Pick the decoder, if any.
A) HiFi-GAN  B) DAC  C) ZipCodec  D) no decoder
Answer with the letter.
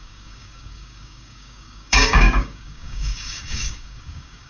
B